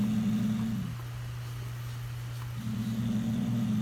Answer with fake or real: real